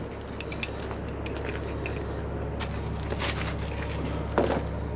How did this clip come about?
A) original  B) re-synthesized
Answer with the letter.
A